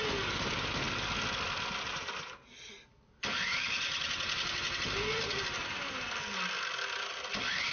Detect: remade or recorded recorded